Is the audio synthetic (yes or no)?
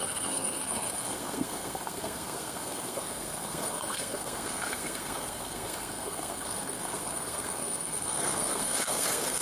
yes